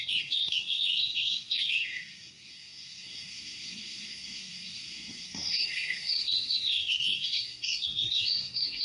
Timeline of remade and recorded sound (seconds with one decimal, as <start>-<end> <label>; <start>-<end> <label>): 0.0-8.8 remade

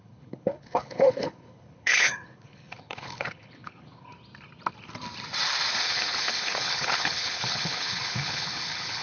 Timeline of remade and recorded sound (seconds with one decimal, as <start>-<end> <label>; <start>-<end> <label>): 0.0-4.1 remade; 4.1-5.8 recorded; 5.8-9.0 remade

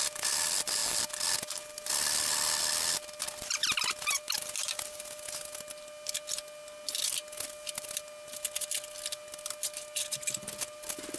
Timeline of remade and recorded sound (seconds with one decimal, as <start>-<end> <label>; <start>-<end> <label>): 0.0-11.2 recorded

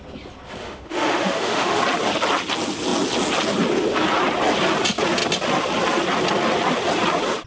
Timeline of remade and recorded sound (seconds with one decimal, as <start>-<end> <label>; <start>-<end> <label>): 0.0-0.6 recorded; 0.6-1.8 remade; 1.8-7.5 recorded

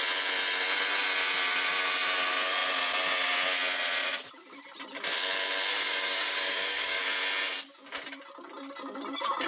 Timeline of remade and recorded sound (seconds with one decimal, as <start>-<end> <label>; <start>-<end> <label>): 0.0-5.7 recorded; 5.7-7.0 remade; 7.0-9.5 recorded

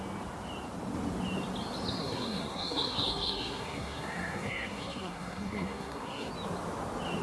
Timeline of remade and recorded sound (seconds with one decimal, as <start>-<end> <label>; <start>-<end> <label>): 0.0-2.0 recorded; 2.0-6.3 remade; 6.3-7.2 recorded

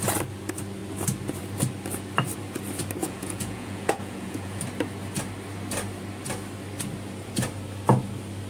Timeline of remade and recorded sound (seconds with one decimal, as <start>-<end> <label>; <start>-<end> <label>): 0.0-3.0 recorded; 3.0-4.6 remade; 4.6-8.5 recorded